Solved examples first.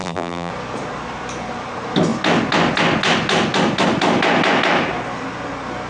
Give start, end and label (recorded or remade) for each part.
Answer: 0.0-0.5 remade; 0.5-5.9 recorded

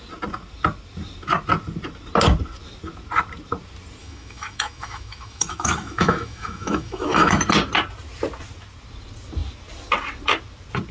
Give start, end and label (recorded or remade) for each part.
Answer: 0.0-4.0 recorded; 4.0-7.4 remade; 7.4-10.9 recorded

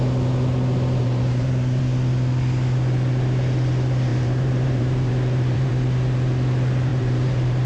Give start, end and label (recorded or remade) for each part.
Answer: 0.0-1.0 recorded; 1.0-1.8 remade; 1.8-4.1 recorded; 4.1-5.7 remade; 5.7-6.9 recorded; 6.9-7.7 remade

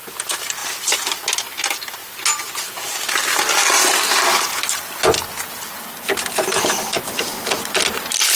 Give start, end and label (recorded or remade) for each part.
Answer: 0.0-8.4 recorded

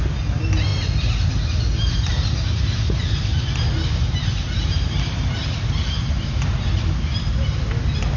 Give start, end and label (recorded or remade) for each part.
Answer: 0.0-8.2 recorded

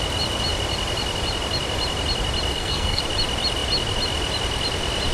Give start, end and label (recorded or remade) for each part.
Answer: 0.0-2.5 recorded; 2.5-3.0 remade; 3.0-5.1 recorded